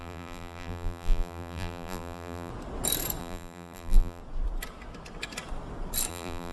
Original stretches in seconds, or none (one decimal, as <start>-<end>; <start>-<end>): 2.5-3.2; 4.2-6.1